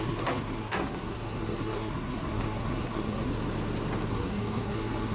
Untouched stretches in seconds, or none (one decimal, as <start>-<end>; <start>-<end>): 3.3-4.1